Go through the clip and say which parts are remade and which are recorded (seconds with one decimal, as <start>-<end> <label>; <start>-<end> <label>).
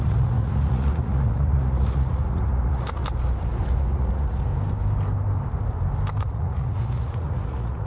0.0-3.0 remade; 3.0-3.8 recorded; 3.8-4.5 remade; 4.5-6.2 recorded; 6.2-7.9 remade